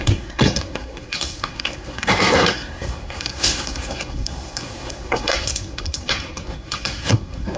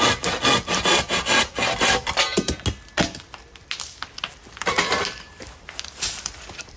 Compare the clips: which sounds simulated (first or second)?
first